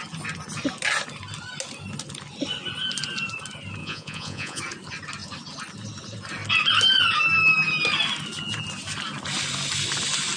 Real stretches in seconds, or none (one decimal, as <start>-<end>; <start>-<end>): 0.0-3.8; 4.6-10.4